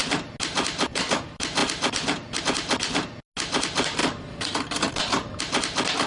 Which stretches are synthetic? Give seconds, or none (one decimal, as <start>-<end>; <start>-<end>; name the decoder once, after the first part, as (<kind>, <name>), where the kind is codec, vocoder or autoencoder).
none

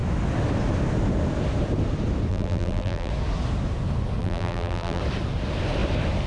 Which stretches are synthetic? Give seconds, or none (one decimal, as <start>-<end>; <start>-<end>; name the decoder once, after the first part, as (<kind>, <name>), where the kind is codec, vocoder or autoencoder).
2.3-3.1 (vocoder, BigVGAN v2); 4.2-5.0

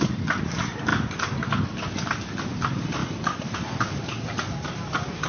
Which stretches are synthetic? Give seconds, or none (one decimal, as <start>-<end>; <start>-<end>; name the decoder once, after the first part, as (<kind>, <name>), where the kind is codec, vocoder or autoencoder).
none

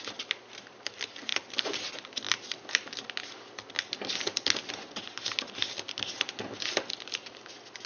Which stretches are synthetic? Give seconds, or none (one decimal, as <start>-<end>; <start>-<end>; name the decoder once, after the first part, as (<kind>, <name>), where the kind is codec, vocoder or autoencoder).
none

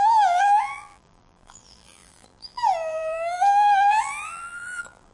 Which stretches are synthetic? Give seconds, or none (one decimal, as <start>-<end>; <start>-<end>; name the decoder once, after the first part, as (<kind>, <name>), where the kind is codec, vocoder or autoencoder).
0.0-5.1 (vocoder, BigVGAN v2)